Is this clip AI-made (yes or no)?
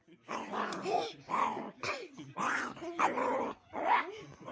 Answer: yes